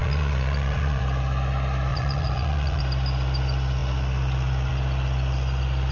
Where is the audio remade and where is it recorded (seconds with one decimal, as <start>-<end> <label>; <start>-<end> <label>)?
0.0-1.0 remade; 1.0-1.9 recorded; 1.9-2.8 remade; 2.8-5.9 recorded